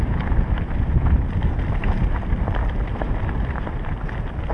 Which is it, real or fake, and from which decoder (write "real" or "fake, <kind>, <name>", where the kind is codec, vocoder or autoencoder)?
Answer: real